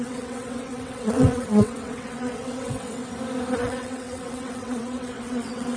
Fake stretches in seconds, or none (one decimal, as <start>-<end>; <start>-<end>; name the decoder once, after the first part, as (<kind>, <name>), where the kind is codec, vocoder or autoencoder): 0.0-3.0 (vocoder, WaveNeXt); 3.6-5.8